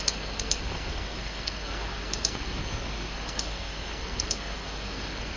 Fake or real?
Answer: fake